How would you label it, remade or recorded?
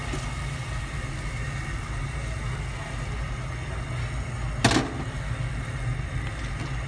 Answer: recorded